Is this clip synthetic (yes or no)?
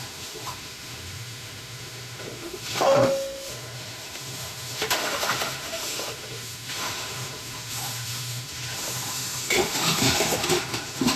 yes